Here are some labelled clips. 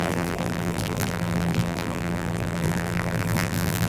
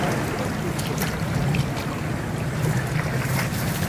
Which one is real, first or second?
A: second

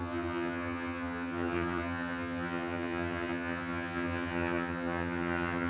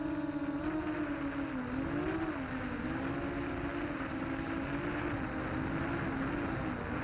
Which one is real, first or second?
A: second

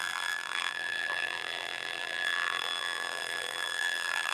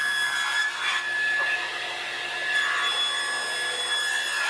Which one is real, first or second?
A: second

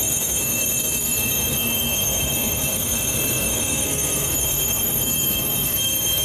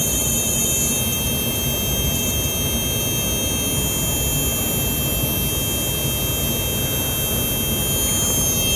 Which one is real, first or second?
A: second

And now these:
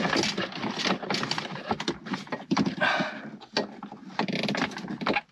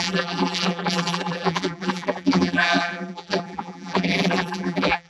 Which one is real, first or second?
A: first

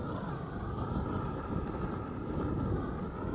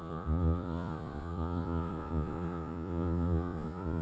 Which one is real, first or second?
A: first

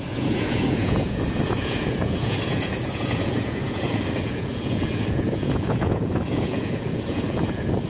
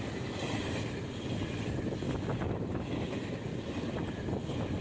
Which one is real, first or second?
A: second